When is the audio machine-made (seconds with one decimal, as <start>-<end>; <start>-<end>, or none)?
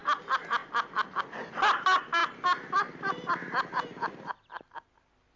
none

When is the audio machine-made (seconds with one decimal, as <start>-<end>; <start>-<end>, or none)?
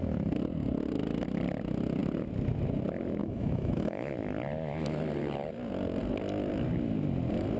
3.2-4.1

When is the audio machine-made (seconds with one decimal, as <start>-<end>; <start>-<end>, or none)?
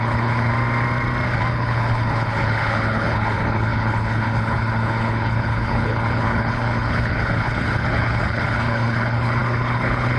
0.0-0.5; 1.5-10.2